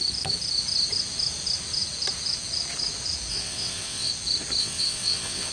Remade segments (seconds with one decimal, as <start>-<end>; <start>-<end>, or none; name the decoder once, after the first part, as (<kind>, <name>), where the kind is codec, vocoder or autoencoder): 3.3-4.1 (vocoder, WaveNeXt); 4.6-5.5